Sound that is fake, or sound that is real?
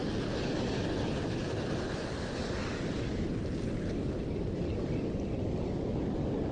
real